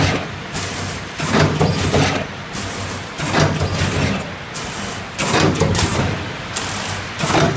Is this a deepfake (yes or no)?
no